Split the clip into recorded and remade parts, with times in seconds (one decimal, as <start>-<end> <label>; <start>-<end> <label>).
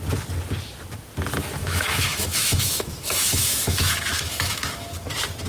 0.0-1.6 recorded; 1.6-4.9 remade; 4.9-5.5 recorded